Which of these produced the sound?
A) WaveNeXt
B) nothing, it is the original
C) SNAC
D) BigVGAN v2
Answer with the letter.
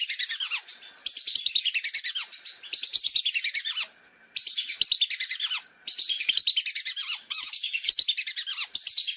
B